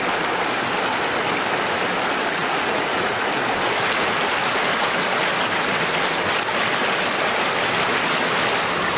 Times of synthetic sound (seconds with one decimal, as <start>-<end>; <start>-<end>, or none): 2.4-3.3